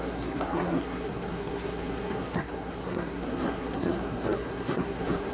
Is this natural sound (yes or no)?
no